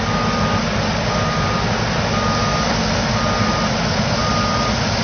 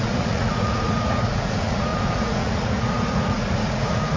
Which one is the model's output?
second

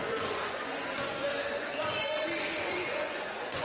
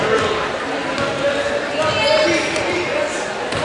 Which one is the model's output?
first